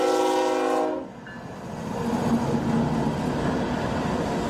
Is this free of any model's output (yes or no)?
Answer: yes